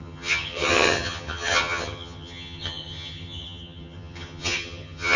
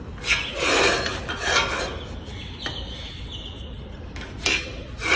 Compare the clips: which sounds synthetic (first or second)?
first